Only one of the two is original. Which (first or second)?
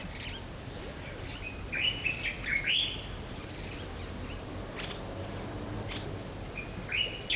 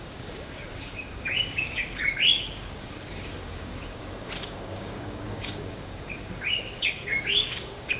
first